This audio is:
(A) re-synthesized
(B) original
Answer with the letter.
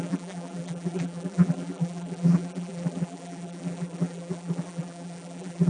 A